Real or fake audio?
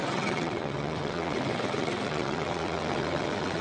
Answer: fake